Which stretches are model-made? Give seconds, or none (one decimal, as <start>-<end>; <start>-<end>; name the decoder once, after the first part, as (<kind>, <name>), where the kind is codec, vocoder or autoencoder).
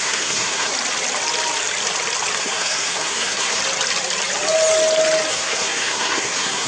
0.0-0.7 (codec, SNAC); 2.4-3.6; 5.3-6.7